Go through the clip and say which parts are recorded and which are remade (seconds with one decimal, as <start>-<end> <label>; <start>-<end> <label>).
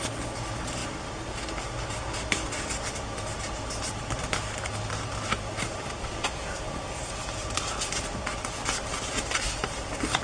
0.0-10.2 recorded